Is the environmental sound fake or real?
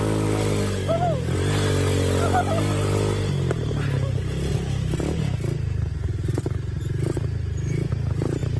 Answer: real